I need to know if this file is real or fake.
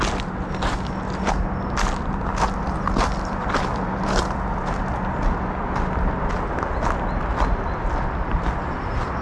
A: real